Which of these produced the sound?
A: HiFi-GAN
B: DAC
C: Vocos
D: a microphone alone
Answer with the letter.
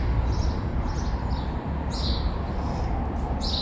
D